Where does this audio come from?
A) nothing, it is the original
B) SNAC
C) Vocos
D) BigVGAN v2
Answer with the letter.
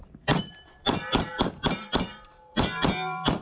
D